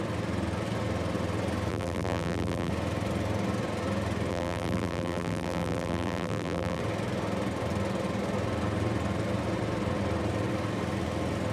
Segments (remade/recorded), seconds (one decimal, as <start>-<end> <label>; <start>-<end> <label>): 0.0-1.7 recorded; 1.7-2.7 remade; 2.7-4.3 recorded; 4.3-6.8 remade; 6.8-11.5 recorded